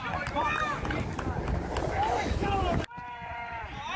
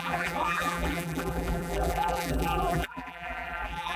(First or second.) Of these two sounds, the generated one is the second